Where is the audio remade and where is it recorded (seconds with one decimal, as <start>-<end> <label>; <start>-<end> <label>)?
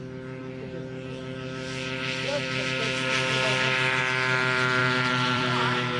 0.0-0.4 recorded; 0.4-4.0 remade; 4.0-4.8 recorded; 4.8-6.0 remade